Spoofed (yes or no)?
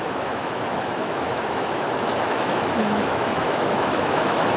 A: yes